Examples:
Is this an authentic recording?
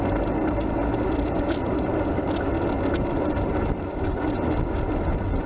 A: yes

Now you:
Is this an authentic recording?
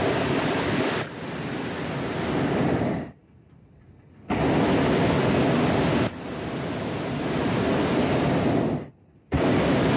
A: yes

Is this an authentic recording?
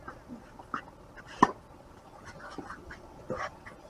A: yes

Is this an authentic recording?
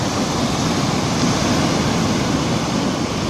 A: yes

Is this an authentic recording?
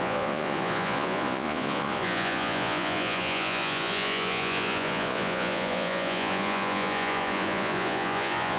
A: no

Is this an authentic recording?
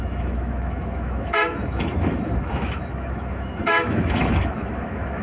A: no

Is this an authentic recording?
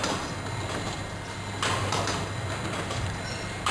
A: yes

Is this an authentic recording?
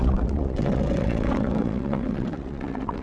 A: no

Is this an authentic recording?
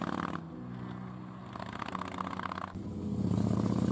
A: yes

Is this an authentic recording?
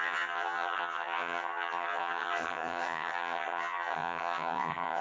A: no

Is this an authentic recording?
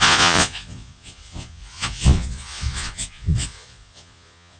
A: no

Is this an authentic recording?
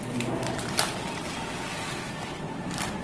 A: yes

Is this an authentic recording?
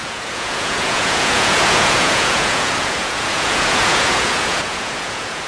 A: no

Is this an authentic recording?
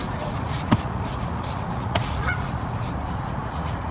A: no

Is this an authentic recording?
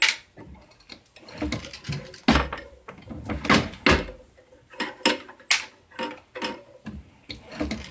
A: yes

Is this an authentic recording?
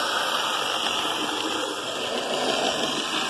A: yes